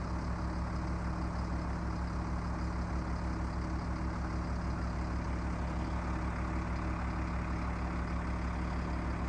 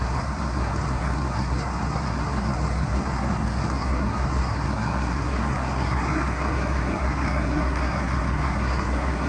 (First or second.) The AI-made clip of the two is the second